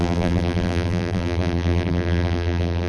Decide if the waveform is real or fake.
fake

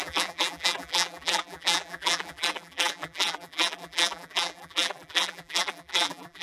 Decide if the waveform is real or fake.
fake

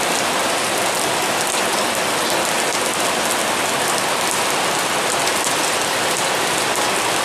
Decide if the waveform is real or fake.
real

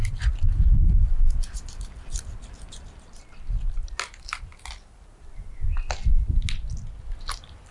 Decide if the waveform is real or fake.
real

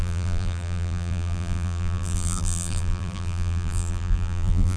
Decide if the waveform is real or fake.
fake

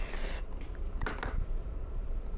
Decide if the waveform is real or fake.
real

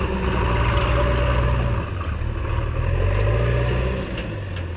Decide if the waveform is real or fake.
real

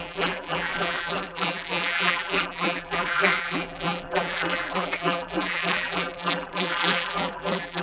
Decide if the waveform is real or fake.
fake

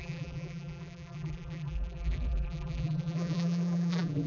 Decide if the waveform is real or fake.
fake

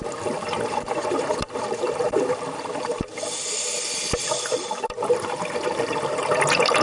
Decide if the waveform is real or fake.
fake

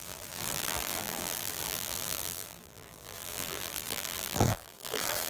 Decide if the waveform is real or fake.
fake